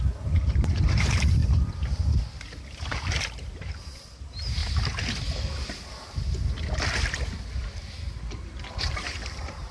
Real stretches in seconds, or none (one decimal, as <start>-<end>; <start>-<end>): 1.4-3.2; 4.6-8.3